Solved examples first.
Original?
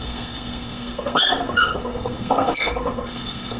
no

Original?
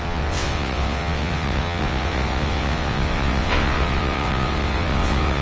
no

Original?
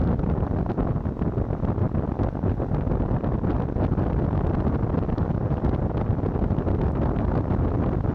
yes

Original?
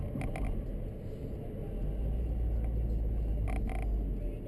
yes